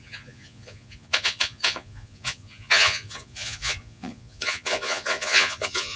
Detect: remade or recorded remade